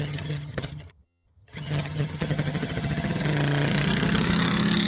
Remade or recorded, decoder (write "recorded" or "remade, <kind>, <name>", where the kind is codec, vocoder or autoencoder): remade, vocoder, HiFi-GAN